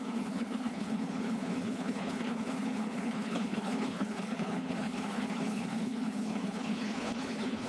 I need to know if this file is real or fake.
fake